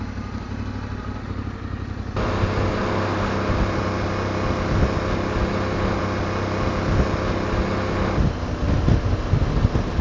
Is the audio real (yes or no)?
yes